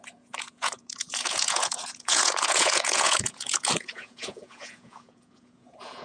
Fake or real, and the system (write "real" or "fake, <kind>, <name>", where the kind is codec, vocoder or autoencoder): fake, vocoder, Vocos